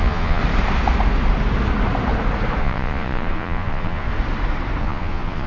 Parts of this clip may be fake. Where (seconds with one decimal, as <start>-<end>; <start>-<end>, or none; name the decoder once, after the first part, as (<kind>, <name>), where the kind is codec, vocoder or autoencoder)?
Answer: 0.0-0.4 (vocoder, Vocos); 2.6-4.1; 4.8-5.5